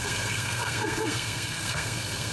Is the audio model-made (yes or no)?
yes